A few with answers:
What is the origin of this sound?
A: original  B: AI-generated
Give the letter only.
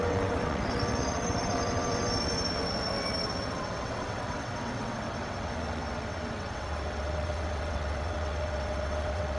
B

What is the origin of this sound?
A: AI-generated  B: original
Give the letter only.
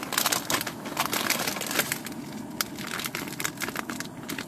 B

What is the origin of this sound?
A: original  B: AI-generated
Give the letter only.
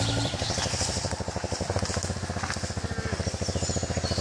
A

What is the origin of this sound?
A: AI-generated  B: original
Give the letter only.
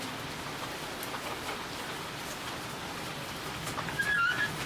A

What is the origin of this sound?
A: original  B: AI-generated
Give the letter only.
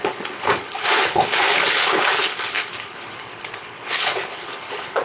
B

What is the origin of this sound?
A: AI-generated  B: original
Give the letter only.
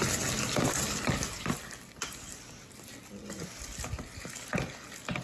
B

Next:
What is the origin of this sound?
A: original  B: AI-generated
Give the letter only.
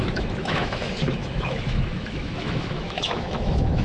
B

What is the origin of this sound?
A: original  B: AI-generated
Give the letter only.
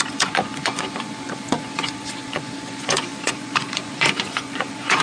B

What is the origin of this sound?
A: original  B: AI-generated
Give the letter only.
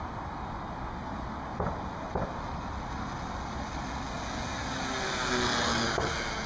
A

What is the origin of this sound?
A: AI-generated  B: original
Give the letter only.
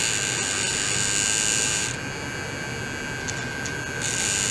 B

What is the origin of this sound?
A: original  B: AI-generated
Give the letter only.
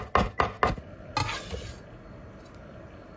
A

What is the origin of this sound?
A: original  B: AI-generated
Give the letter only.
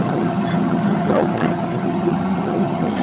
B